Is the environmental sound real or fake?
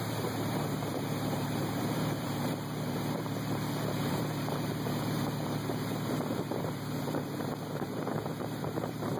fake